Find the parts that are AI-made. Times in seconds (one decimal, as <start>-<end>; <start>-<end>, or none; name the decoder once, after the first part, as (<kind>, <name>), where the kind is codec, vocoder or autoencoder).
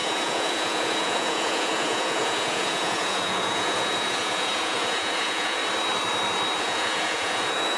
0.0-5.6 (vocoder, Vocos); 6.6-7.8